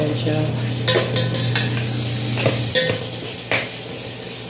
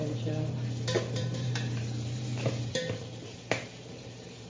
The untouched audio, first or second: first